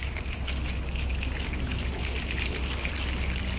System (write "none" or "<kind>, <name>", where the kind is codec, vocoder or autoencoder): none